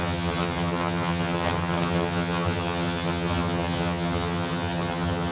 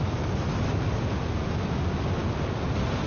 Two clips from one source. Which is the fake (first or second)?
first